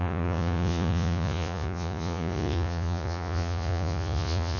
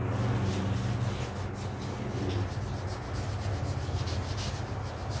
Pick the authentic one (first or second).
second